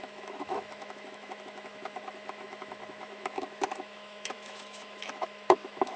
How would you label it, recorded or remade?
remade